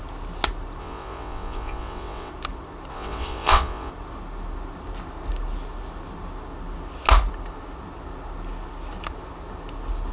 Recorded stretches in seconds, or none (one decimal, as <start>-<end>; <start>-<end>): 0.0-0.8; 2.3-2.9; 3.9-10.1

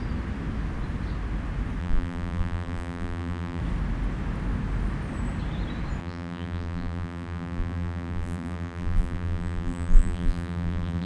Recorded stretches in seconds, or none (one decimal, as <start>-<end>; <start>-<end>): 0.0-1.8; 3.6-6.0